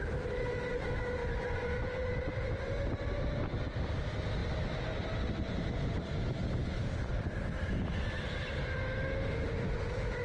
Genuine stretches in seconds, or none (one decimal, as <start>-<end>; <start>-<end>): 0.0-1.2; 2.3-10.2